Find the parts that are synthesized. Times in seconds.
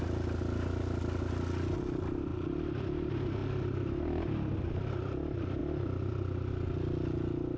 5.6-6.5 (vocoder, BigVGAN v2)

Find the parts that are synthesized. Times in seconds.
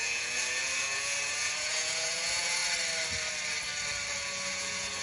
0.0-2.6 (vocoder, Vocos); 4.1-5.0